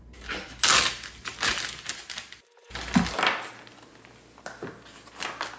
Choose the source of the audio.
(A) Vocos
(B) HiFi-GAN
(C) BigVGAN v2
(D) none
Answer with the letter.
D